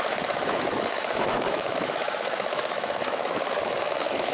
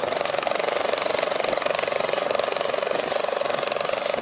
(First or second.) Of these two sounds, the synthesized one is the first